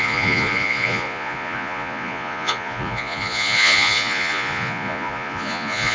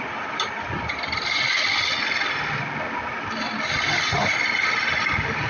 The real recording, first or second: second